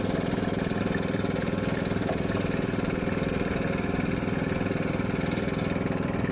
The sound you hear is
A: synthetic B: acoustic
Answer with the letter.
B